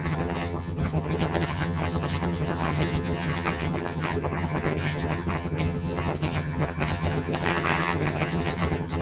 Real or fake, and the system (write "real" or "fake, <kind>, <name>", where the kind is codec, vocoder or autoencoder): fake, vocoder, HiFi-GAN